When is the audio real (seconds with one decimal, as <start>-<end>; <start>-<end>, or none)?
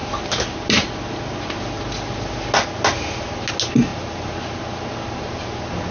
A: 0.0-5.9